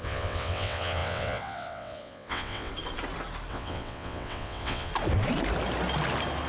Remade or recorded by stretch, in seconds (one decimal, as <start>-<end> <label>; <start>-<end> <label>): 0.0-2.7 remade; 2.7-3.5 recorded; 3.5-4.9 remade; 4.9-6.5 recorded